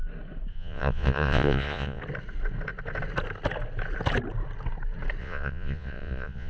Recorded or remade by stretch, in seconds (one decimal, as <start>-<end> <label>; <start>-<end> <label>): 0.0-0.5 recorded; 0.5-2.0 remade; 2.0-5.2 recorded; 5.2-6.5 remade